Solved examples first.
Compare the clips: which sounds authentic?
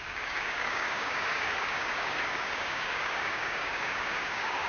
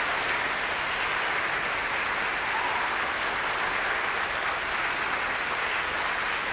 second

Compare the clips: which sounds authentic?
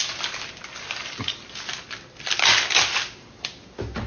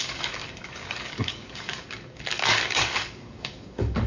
first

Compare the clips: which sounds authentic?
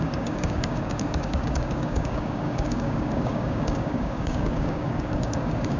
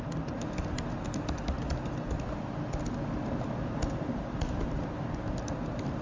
second